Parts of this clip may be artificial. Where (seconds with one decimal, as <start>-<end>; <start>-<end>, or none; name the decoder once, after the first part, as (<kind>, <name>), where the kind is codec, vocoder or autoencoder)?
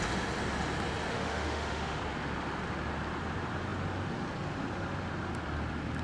1.1-2.0 (autoencoder, DAC-VAE)